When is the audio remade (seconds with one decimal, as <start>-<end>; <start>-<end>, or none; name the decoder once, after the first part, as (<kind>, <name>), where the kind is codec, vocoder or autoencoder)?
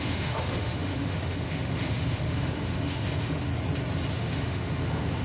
0.0-3.5 (autoencoder, DAC-VAE); 4.1-5.2